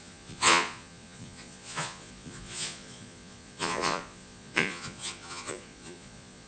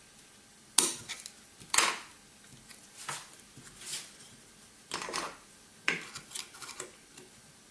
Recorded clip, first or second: second